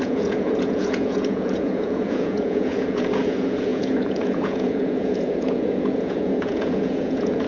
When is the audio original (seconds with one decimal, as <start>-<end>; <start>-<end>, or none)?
none